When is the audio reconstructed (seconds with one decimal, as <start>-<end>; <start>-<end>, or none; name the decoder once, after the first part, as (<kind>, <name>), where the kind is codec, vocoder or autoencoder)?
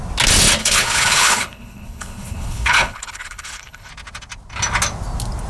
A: 0.6-3.9 (codec, HILCodec)